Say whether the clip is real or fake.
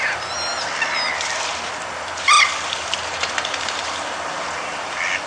real